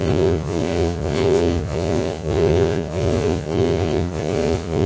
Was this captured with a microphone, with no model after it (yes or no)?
no